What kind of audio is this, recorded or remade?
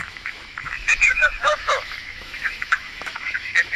remade